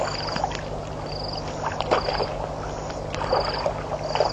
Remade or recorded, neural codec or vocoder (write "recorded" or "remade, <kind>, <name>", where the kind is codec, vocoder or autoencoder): recorded